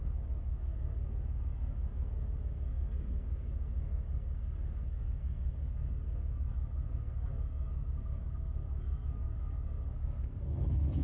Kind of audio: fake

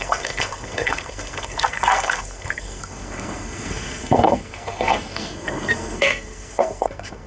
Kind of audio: fake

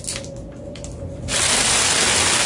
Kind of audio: real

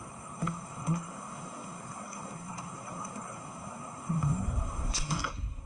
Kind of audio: fake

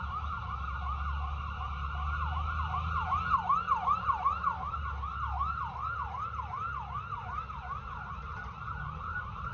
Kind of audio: real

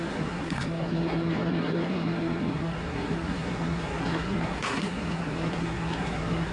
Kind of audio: fake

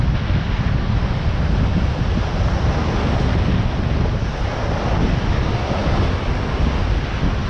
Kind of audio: real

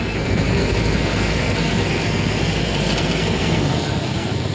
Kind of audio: fake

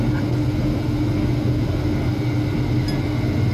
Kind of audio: real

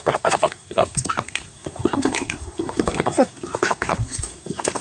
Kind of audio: fake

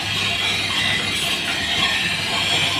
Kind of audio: real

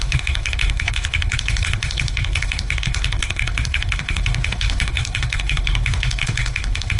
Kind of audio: fake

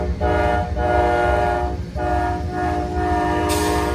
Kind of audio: real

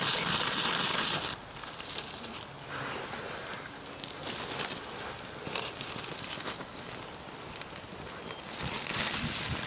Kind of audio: real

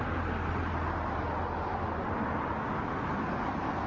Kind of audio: real